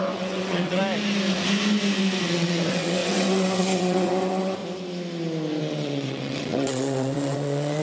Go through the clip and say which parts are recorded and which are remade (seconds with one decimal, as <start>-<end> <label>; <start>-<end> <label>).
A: 0.0-0.8 remade; 0.8-2.2 recorded; 2.2-4.6 remade; 4.6-5.6 recorded; 5.6-7.8 remade